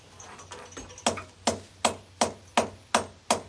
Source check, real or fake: real